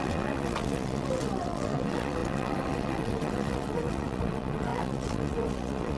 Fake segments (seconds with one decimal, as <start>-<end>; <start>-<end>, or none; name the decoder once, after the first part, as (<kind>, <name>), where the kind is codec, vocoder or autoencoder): 0.0-6.0 (vocoder, WaveNeXt)